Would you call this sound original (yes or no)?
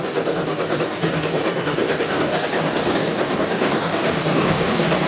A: no